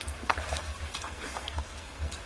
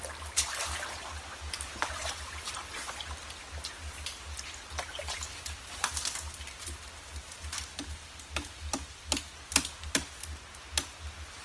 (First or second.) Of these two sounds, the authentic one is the second